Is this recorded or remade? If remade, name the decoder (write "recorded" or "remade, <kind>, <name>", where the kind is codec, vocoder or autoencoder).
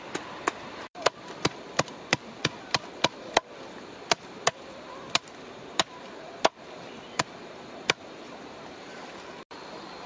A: remade, vocoder, BigVGAN v2